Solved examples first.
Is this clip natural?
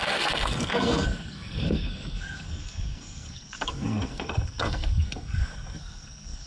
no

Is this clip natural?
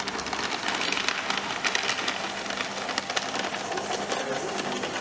yes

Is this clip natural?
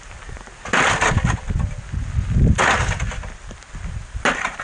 yes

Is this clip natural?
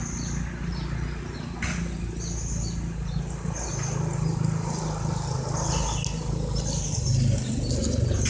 yes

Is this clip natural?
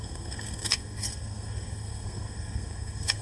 no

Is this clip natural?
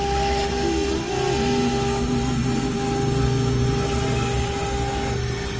yes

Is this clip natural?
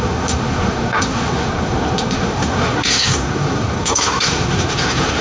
no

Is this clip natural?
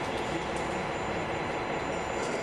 yes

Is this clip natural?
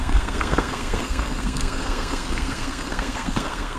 no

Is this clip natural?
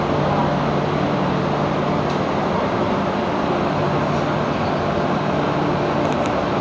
yes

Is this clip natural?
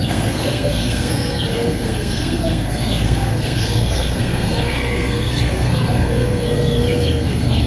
no